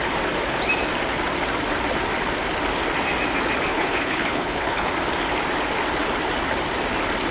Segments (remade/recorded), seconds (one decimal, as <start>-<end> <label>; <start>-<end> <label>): 0.0-3.7 recorded; 3.7-4.9 remade; 4.9-7.3 recorded